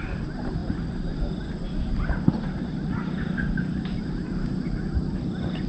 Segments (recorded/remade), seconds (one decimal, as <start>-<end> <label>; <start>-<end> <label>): 0.0-5.7 recorded